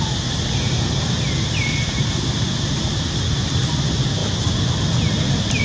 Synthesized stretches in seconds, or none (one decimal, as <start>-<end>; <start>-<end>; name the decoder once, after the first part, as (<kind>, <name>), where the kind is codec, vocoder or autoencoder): none

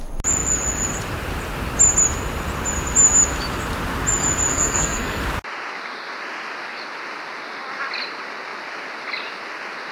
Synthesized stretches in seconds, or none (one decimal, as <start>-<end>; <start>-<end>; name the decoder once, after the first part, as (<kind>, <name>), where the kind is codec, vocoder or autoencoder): 4.5-5.2 (codec, SNAC)